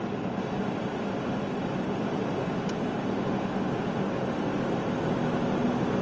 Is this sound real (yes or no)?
yes